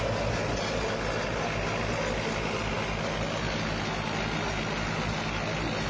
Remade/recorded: recorded